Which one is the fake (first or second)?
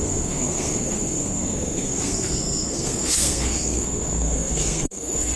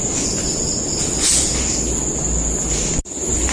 first